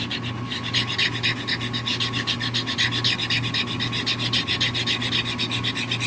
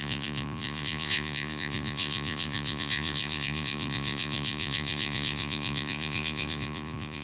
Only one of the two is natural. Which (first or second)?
first